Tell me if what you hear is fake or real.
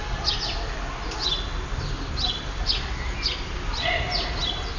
real